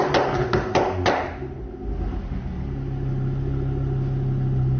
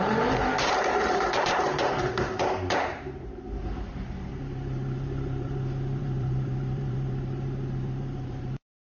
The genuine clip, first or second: first